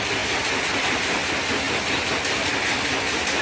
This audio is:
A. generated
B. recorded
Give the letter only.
B